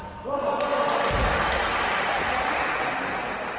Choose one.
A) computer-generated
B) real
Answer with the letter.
B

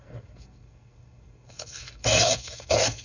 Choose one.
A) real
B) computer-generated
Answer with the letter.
B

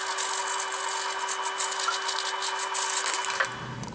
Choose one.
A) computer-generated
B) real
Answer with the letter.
B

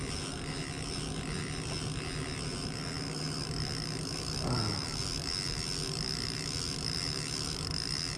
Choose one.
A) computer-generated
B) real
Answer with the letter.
B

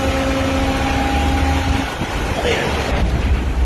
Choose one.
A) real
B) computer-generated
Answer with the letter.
A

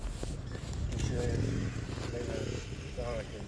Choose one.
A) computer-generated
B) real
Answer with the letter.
B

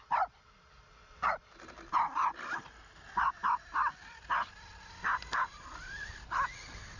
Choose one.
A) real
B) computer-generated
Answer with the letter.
A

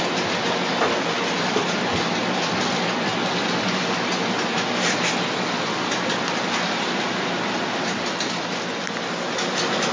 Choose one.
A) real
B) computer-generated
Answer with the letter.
A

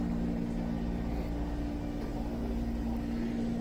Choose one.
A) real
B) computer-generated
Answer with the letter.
A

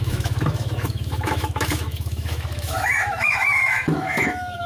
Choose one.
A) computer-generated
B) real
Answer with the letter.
A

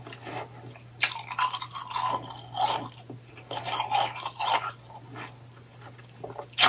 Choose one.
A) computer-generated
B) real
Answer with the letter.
B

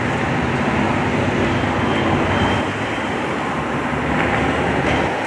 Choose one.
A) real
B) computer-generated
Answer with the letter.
A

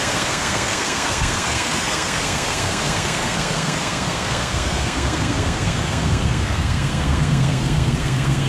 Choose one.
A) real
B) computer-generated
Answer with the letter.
B